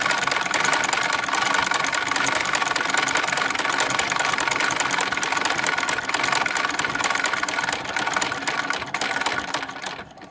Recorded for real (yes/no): yes